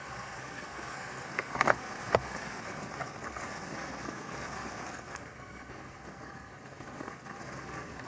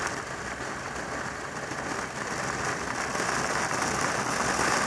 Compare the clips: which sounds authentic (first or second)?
second